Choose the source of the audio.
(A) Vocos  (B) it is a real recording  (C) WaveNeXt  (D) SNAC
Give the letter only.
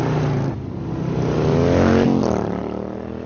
B